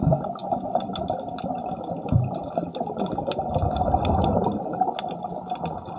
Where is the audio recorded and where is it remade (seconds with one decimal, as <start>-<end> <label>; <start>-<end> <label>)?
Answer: 0.0-6.0 recorded